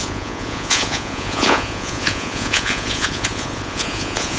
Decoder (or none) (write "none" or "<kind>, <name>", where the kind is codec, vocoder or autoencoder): vocoder, Vocos